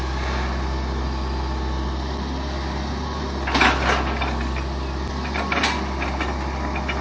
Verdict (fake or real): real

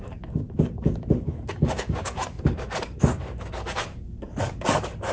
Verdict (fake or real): fake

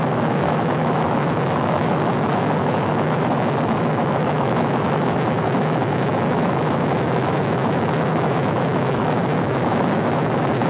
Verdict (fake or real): fake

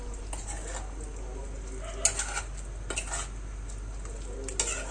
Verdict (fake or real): real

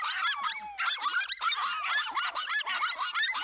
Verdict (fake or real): real